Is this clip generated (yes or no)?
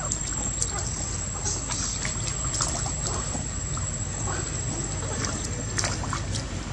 no